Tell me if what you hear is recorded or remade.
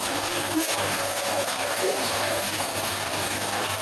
remade